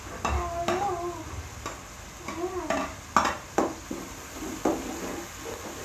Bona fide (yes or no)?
yes